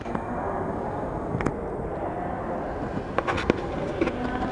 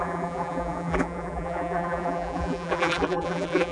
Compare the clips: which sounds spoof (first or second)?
second